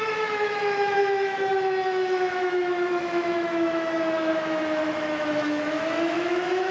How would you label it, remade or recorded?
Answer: remade